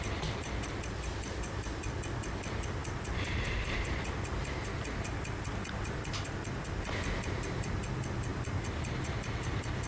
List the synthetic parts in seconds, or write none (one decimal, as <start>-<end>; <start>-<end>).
none